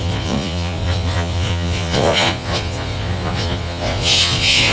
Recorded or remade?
remade